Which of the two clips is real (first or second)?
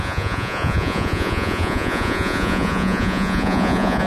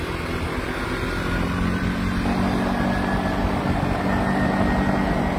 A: second